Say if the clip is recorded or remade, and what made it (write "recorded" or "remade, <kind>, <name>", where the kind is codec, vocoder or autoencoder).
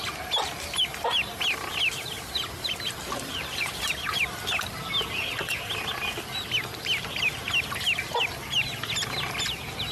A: recorded